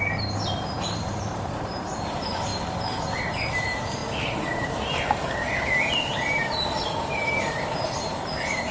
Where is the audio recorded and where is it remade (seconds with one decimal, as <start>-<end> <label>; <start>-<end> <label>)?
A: 0.0-2.5 remade; 2.5-3.3 recorded; 3.3-8.7 remade